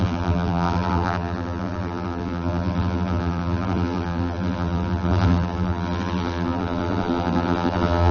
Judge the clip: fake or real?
fake